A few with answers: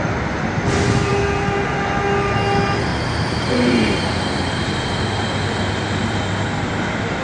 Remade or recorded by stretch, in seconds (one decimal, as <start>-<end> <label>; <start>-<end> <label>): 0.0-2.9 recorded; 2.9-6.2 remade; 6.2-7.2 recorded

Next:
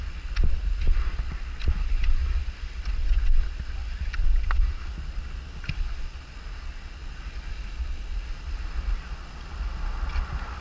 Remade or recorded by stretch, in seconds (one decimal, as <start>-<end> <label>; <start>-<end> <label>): 0.0-4.2 recorded; 4.2-4.8 remade; 4.8-10.6 recorded

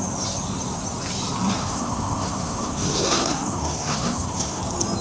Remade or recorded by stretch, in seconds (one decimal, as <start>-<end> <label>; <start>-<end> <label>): 0.0-1.6 recorded; 1.6-4.6 remade; 4.6-5.0 recorded

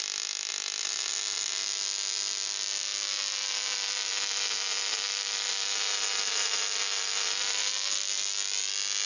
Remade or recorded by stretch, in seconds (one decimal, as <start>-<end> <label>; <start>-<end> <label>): 0.0-4.9 recorded; 4.9-5.5 remade; 5.5-7.6 recorded; 7.6-8.7 remade; 8.7-9.1 recorded